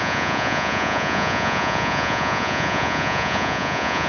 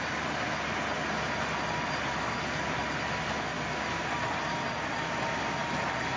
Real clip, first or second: second